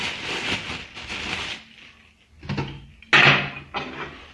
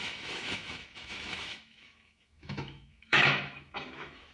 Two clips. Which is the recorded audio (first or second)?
first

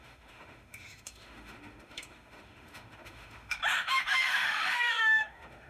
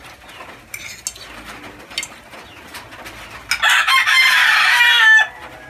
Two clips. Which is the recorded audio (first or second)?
second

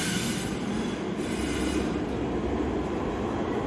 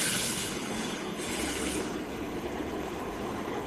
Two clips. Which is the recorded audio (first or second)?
first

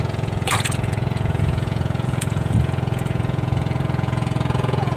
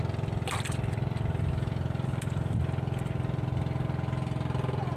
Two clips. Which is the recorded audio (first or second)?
second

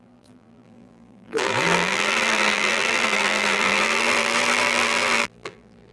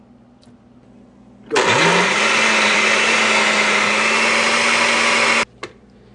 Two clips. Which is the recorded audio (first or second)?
second